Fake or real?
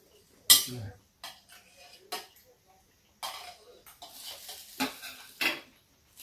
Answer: real